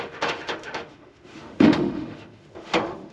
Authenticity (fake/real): fake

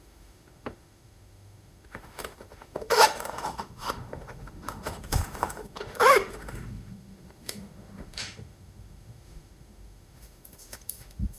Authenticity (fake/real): fake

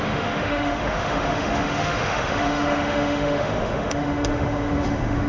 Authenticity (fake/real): fake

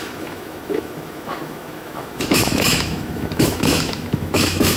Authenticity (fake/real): fake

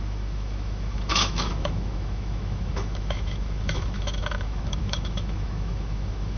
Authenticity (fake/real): fake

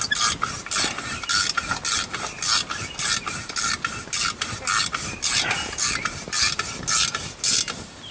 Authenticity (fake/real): real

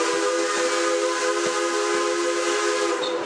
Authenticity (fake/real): real